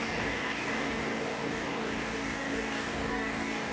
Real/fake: fake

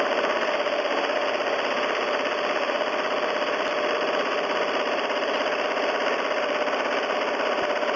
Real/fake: real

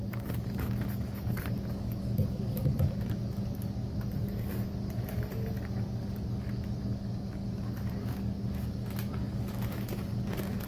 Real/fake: fake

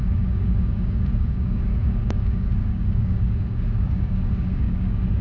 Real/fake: fake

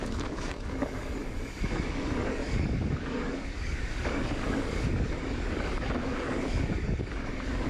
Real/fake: fake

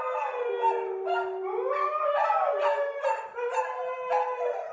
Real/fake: real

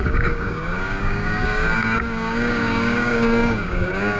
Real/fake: fake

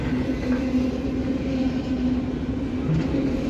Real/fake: real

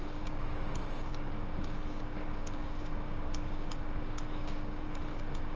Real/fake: fake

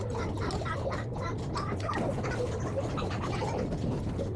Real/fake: real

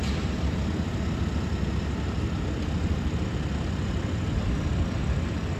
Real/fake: real